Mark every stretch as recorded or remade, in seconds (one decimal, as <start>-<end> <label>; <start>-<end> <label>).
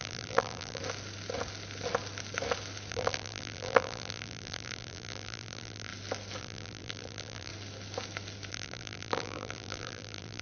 0.0-0.8 remade; 0.8-2.9 recorded; 2.9-5.9 remade; 5.9-6.4 recorded; 6.4-7.5 remade; 7.5-8.5 recorded; 8.5-10.4 remade